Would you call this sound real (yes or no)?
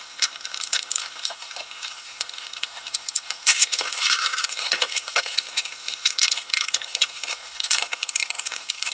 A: no